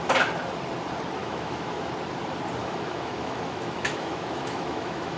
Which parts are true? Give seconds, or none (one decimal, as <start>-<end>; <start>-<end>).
0.0-1.2; 1.9-2.6